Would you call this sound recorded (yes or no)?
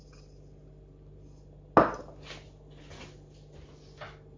yes